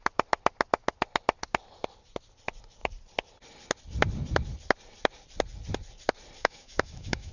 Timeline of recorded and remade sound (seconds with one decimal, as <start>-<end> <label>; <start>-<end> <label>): 0.0-6.4 recorded; 6.4-7.3 remade